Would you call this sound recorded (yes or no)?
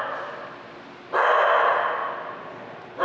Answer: yes